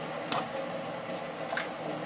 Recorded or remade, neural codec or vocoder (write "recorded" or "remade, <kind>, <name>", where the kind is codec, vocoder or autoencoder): recorded